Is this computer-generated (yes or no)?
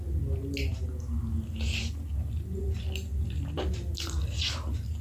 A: no